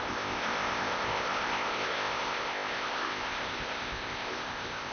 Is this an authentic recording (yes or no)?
no